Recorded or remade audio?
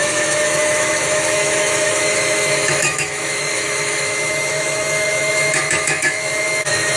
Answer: remade